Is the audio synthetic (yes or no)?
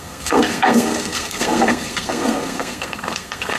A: yes